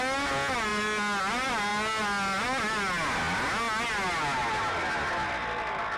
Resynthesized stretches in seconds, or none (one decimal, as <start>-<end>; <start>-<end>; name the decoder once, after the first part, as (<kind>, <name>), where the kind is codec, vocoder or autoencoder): none

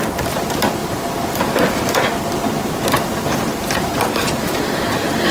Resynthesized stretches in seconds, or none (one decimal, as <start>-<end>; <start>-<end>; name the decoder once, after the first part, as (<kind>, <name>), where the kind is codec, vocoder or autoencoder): none

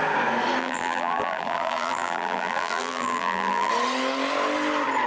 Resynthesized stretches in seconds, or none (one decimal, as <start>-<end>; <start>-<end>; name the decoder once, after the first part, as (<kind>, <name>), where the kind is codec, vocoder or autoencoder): 0.6-3.7 (vocoder, BigVGAN v2)

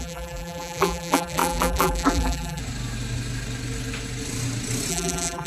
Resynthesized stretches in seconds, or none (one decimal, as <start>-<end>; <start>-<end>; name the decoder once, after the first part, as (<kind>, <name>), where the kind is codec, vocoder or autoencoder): 0.0-2.6 (vocoder, BigVGAN v2); 4.9-5.5

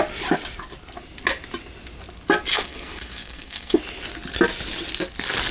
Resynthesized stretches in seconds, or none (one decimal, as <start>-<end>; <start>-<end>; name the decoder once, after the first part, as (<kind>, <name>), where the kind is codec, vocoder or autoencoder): 2.5-3.8 (codec, SNAC)